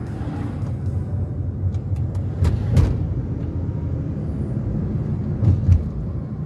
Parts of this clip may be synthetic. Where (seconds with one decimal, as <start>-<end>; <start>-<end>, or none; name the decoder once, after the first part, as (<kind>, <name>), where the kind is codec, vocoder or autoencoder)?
none